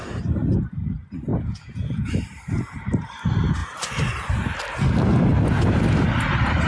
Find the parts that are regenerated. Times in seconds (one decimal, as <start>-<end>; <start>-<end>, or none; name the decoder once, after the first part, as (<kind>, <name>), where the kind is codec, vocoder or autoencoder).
1.3-2.1 (vocoder, Vocos)